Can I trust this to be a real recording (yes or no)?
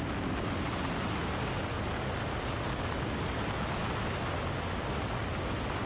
yes